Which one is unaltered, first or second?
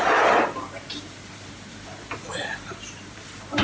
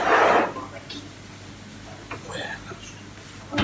second